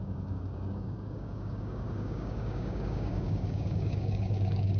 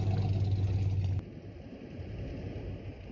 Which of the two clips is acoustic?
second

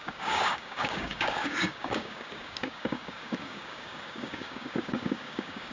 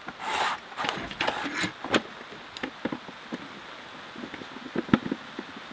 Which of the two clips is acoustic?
second